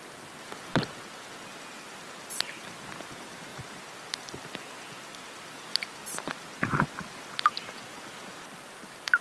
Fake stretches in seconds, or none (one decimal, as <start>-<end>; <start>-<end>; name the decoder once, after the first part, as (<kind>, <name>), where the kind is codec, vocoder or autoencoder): 0.0-5.7 (vocoder, BigVGAN v2); 7.7-9.2